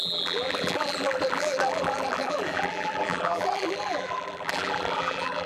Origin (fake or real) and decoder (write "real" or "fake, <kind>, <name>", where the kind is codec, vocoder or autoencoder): fake, vocoder, BigVGAN v2